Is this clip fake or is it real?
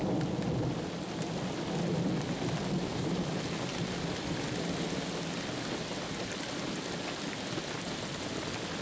real